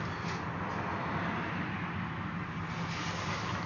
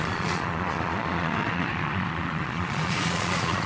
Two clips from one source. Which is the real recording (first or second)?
first